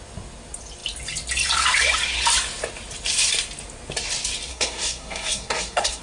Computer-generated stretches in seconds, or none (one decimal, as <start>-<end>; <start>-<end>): 4.5-6.0